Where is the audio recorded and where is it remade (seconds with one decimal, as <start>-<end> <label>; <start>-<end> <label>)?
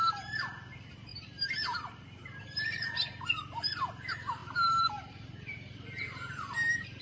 0.0-1.1 recorded; 1.1-2.4 remade; 2.4-4.4 recorded; 4.4-7.0 remade